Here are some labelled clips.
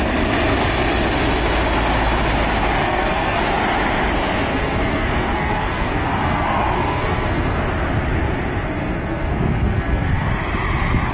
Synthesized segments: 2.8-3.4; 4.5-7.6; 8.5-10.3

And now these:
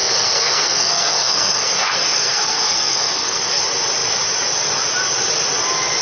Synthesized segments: 0.0-3.6